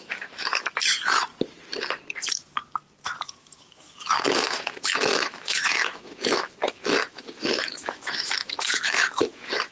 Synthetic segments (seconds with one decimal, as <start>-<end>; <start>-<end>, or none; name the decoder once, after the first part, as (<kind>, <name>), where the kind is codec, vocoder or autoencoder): 0.0-1.3 (autoencoder, DAC-VAE); 3.2-9.7